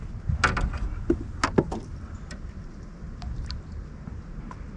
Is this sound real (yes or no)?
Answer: yes